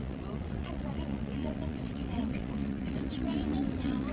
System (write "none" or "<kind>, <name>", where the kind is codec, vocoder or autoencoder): vocoder, WaveNeXt